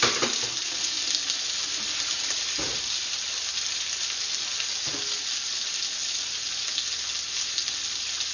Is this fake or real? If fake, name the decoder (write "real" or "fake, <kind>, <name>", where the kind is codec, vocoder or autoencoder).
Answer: real